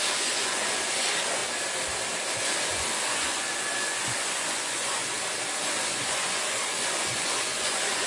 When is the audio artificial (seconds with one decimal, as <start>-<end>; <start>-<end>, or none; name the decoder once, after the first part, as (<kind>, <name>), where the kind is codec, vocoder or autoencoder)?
0.0-1.4 (vocoder, Vocos); 2.4-5.0; 5.7-8.1